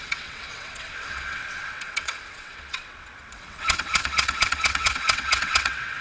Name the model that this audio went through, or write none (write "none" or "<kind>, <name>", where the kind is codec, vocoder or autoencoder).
vocoder, WaveNeXt